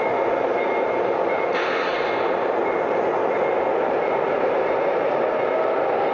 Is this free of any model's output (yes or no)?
yes